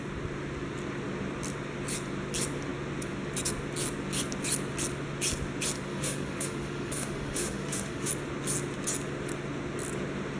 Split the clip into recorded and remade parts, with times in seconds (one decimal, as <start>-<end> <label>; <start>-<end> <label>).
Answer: 0.0-5.9 recorded; 5.9-8.1 remade; 8.1-10.4 recorded